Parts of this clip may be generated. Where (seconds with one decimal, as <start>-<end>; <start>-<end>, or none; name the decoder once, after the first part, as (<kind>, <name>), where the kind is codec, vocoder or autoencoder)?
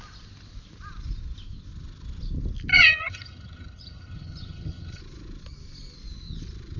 2.7-5.0 (vocoder, HiFi-GAN)